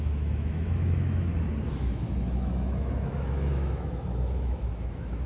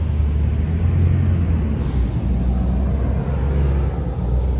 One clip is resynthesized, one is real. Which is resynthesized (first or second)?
first